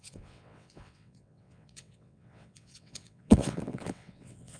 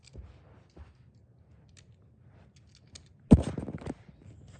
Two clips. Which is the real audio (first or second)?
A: second